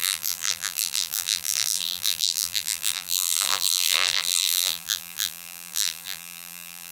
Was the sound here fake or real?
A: fake